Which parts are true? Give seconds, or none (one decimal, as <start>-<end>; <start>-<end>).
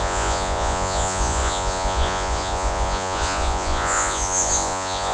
none